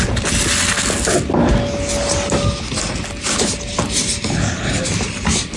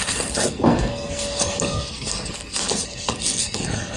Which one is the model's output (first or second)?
second